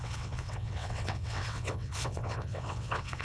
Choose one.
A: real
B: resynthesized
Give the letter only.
B